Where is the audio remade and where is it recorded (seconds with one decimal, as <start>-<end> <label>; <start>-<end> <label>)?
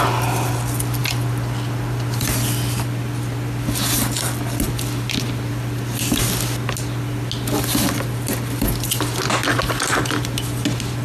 0.0-11.0 recorded